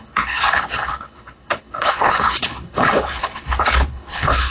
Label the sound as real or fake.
fake